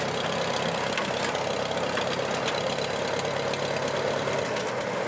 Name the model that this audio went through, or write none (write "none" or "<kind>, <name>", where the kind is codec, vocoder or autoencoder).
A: none